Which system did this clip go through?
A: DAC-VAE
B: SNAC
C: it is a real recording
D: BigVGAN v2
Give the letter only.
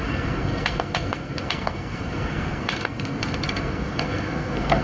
B